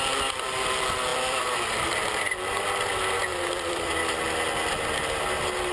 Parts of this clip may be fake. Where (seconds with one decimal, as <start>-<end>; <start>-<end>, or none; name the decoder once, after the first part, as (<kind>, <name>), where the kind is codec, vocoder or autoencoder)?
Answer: 1.1-2.6 (vocoder, BigVGAN v2); 3.3-3.9